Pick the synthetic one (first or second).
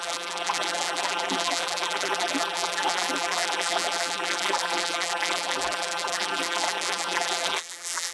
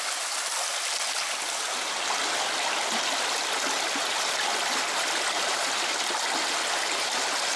first